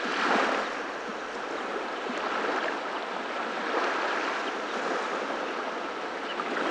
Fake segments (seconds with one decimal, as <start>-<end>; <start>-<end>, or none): none